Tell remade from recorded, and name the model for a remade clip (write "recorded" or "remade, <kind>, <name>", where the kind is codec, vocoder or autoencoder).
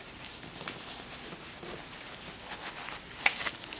recorded